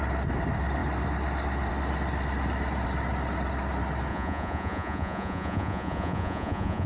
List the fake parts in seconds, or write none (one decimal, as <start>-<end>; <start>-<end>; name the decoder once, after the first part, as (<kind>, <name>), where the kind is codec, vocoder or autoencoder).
4.1-6.9 (vocoder, Vocos)